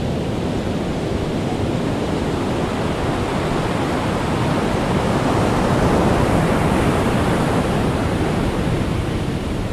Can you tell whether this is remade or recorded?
recorded